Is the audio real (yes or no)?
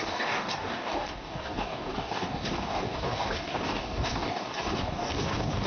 no